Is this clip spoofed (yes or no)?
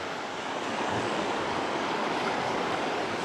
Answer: yes